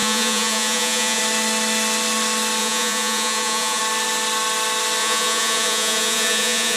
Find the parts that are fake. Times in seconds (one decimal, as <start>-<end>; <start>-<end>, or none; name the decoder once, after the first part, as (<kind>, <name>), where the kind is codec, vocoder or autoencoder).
0.0-1.2 (vocoder, Vocos); 2.6-3.8; 5.0-6.8